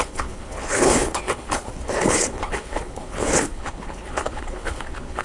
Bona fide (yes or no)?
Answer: no